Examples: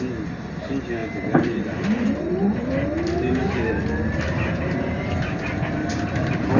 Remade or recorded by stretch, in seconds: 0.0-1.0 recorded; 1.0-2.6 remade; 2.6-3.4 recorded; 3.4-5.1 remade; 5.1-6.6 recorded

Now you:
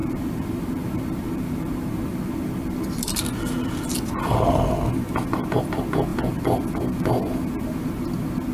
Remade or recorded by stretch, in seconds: 0.0-3.9 remade; 3.9-6.1 recorded; 6.1-7.1 remade; 7.1-8.5 recorded